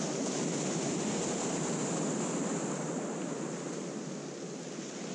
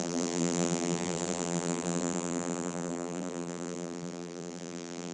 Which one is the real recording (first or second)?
first